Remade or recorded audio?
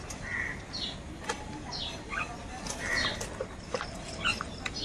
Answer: recorded